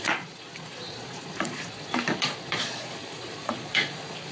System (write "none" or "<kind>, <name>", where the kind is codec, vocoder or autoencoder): vocoder, Vocos